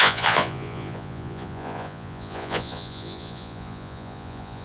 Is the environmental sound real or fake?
fake